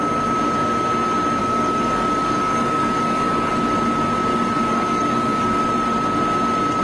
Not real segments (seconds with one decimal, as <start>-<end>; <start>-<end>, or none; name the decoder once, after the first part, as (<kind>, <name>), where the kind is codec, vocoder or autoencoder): 1.4-3.5 (codec, DAC); 4.3-5.6